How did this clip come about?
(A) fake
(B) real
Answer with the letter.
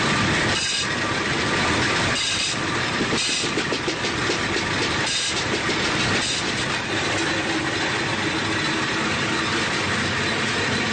B